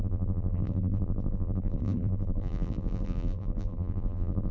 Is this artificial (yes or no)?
yes